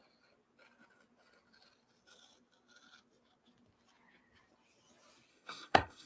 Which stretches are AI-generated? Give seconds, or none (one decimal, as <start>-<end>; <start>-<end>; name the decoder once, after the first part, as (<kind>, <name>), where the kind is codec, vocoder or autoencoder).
5.3-6.1 (codec, SNAC)